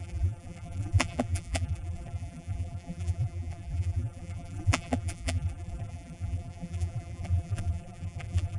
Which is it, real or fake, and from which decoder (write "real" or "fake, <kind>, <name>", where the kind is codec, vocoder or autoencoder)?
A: fake, vocoder, BigVGAN v2